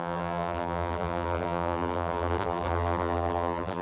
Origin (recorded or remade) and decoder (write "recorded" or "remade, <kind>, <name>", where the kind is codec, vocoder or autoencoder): remade, vocoder, BigVGAN v2